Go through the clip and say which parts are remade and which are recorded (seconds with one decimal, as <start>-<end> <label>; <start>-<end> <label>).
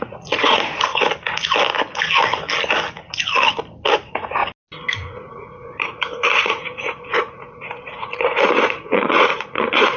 0.0-0.9 remade; 0.9-3.9 recorded; 3.9-4.4 remade; 4.4-4.9 recorded; 4.9-10.0 remade